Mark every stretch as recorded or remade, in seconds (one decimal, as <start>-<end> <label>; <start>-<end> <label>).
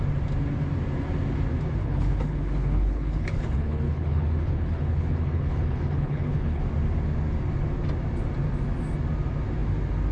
0.0-1.8 recorded; 1.8-6.6 remade; 6.6-10.1 recorded